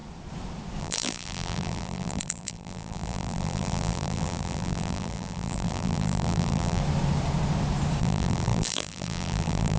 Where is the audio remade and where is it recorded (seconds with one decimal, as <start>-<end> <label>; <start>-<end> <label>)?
0.0-0.8 recorded; 0.8-6.8 remade; 6.8-8.0 recorded; 8.0-9.8 remade

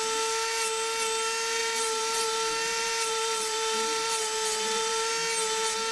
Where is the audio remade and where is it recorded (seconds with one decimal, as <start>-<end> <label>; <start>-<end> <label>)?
0.0-1.6 recorded; 1.6-5.1 remade; 5.1-5.9 recorded

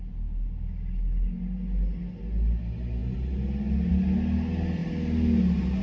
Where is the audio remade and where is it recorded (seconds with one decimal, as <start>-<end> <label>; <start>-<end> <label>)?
0.0-5.8 recorded

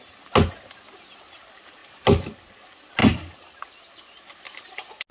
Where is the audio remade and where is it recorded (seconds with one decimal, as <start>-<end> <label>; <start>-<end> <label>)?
0.0-5.1 recorded

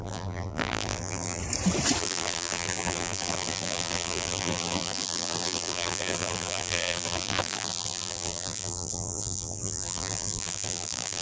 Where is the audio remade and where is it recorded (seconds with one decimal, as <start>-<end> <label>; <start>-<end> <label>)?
0.0-1.4 remade; 1.4-2.0 recorded; 2.0-11.2 remade

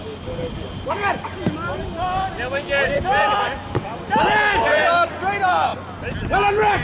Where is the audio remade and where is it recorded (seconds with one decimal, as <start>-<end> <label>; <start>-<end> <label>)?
0.0-5.7 remade; 5.7-6.3 recorded; 6.3-6.8 remade

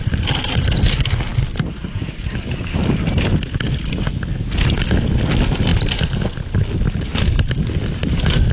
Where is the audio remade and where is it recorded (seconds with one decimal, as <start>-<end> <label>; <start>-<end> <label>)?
0.0-8.5 recorded

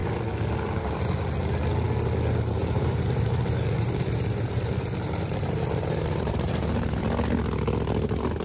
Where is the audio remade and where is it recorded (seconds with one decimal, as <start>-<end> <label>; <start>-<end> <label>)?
0.0-2.6 recorded; 2.6-7.0 remade; 7.0-8.4 recorded